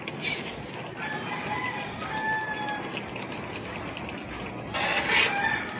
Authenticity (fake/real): real